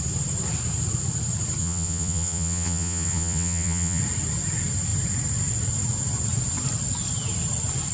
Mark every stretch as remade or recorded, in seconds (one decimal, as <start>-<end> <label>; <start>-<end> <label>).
0.0-1.6 recorded; 1.6-4.0 remade; 4.0-7.9 recorded